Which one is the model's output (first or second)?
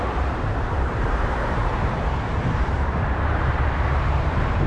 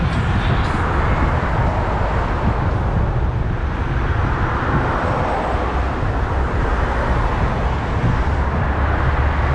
first